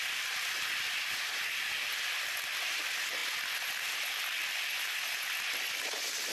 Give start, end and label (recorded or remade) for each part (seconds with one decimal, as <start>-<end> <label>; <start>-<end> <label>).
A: 0.0-6.3 recorded